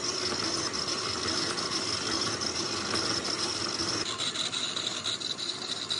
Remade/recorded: recorded